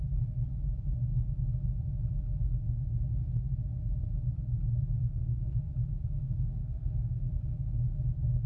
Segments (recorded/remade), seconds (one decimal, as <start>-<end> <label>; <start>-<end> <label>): 0.0-5.0 recorded; 5.0-5.7 remade; 5.7-6.2 recorded; 6.2-7.3 remade; 7.3-8.5 recorded